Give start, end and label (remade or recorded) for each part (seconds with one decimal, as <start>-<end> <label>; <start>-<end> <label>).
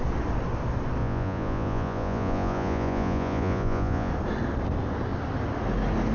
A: 0.0-1.0 recorded; 1.0-4.1 remade; 4.1-6.1 recorded